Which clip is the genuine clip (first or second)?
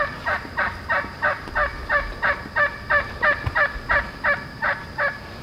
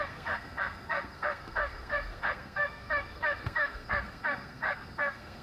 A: first